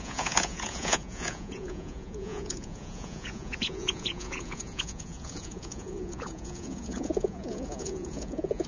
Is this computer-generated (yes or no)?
yes